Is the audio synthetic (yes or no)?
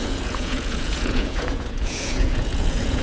yes